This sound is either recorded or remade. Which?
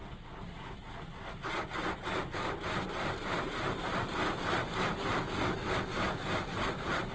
recorded